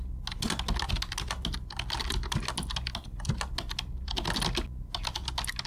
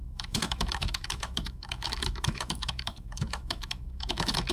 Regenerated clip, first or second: second